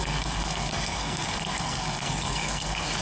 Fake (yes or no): yes